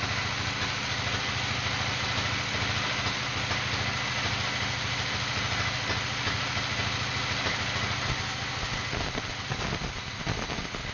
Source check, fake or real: real